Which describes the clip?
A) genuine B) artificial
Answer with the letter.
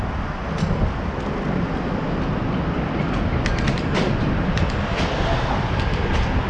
A